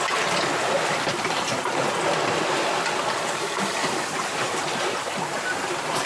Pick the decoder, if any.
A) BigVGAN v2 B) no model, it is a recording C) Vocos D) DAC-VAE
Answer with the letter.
A